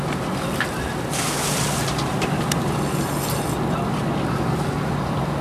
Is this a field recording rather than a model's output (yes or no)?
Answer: yes